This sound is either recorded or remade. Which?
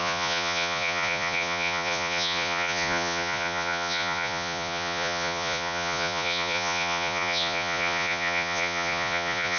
remade